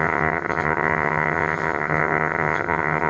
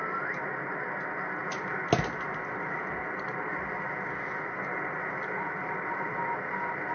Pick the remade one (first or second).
first